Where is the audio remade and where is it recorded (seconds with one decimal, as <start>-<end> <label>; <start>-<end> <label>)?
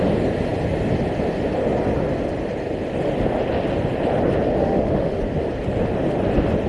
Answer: 0.0-4.6 recorded; 4.6-5.2 remade; 5.2-6.7 recorded